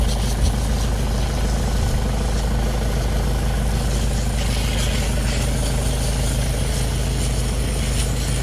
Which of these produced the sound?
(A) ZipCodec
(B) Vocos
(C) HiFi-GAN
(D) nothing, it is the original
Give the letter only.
D